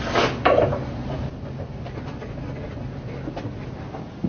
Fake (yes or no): no